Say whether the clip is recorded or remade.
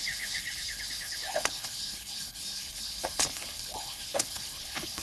remade